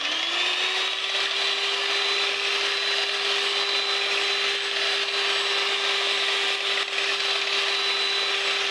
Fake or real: real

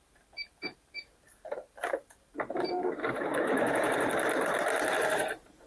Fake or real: fake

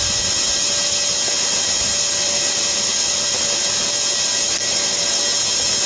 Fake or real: real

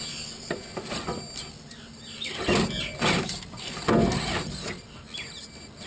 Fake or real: real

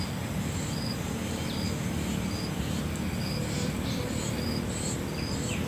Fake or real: real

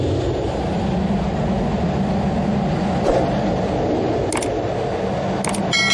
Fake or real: real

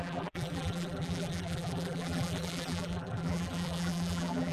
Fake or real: fake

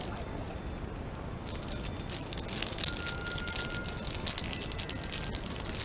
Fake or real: real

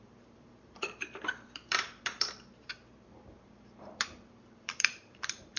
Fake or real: fake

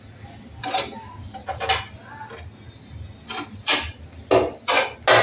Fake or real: real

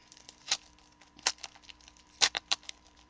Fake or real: fake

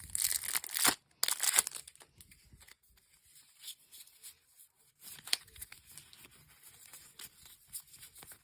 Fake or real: real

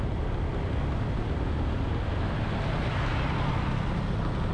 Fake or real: real